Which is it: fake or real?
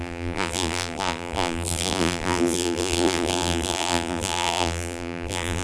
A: fake